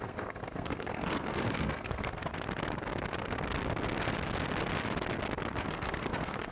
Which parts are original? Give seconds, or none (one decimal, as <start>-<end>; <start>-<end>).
2.3-5.6